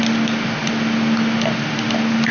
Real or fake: real